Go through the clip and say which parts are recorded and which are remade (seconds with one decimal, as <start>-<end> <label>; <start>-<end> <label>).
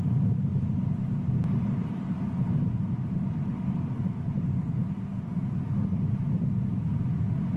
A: 0.0-0.5 recorded; 0.5-3.7 remade; 3.7-7.6 recorded